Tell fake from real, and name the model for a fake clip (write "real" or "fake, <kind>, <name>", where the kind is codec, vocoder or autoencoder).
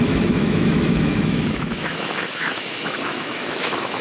fake, autoencoder, DAC-VAE